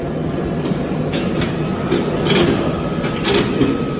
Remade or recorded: recorded